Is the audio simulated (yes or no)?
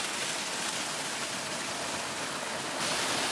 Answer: no